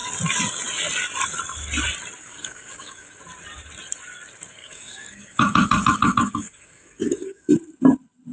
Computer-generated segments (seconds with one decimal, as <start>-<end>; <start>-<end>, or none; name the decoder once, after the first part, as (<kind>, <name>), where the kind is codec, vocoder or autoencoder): 2.2-3.2 (codec, DAC); 4.6-7.5